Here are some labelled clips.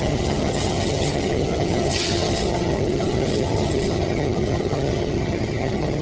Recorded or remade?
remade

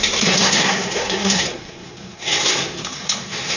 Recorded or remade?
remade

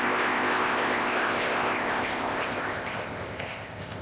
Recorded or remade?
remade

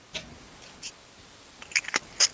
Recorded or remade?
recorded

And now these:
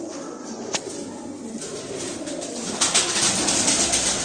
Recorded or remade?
recorded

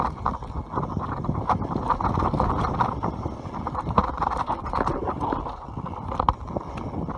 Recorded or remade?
recorded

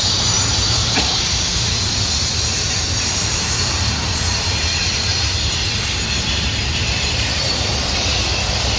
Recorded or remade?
remade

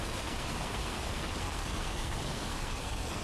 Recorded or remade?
remade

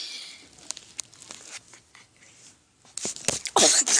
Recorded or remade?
recorded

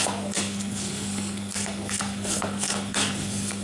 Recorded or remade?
remade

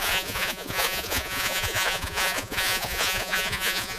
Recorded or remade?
remade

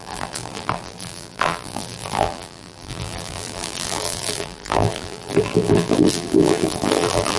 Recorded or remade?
remade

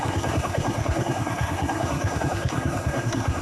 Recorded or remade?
remade